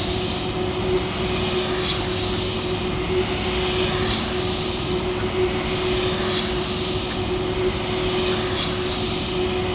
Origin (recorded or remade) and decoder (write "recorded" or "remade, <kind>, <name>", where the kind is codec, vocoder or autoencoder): recorded